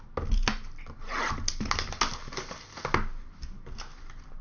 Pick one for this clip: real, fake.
real